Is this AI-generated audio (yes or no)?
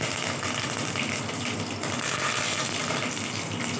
no